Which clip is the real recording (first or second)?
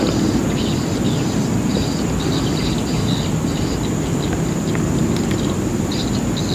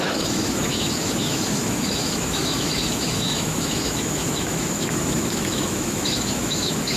first